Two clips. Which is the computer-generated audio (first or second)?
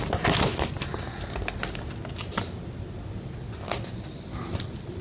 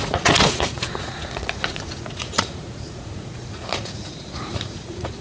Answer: second